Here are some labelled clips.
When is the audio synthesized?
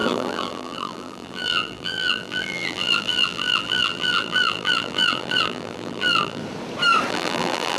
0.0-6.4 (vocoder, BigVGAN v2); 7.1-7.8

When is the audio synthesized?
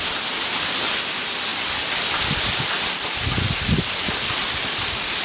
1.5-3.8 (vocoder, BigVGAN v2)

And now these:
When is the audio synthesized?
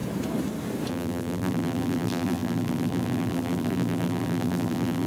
0.9-5.1 (vocoder, BigVGAN v2)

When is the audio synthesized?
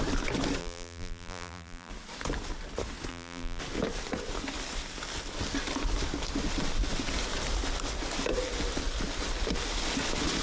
0.6-1.9 (vocoder, BigVGAN v2); 3.1-3.6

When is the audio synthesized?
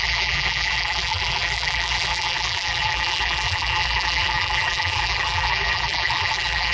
0.0-6.7 (vocoder, BigVGAN v2)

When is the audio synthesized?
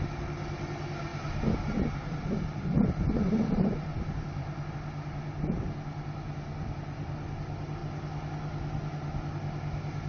1.1-4.7 (vocoder, BigVGAN v2)